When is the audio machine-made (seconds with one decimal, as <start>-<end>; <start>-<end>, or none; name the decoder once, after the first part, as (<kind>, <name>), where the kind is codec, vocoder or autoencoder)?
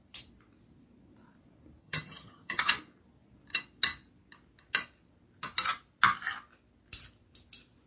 1.8-2.7 (vocoder, HiFi-GAN)